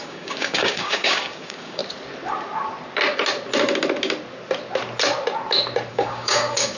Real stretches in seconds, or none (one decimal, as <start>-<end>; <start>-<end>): 1.8-5.9